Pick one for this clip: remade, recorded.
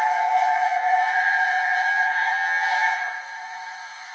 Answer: remade